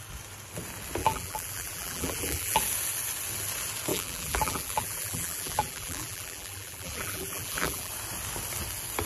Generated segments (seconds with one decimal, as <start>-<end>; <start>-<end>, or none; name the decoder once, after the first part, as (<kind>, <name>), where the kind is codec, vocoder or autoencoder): 1.0-2.6 (vocoder, BigVGAN v2); 3.9-7.9